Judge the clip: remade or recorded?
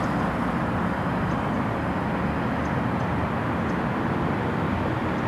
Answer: recorded